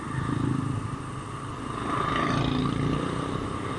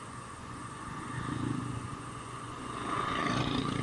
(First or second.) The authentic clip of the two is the first